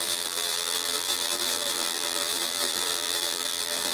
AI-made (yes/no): yes